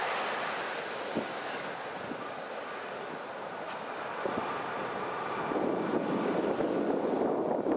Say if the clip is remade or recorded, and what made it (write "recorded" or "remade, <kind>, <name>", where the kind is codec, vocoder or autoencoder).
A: recorded